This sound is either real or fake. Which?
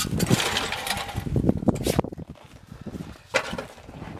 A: fake